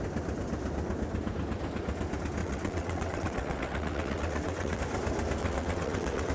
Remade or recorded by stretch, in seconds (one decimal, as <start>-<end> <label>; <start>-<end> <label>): 0.0-2.4 recorded; 2.4-4.8 remade; 4.8-5.4 recorded; 5.4-6.3 remade